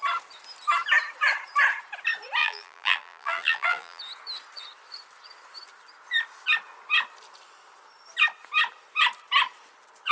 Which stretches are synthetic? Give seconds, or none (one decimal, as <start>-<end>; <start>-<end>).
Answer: 2.4-4.0